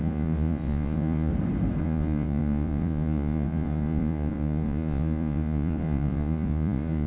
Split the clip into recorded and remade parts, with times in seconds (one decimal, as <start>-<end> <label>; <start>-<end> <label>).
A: 0.0-1.3 remade; 1.3-1.8 recorded; 1.8-7.1 remade